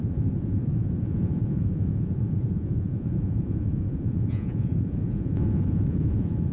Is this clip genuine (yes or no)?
no